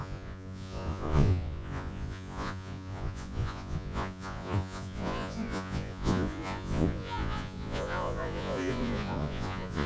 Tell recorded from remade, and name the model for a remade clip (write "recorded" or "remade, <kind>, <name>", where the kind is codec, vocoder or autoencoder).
remade, vocoder, Vocos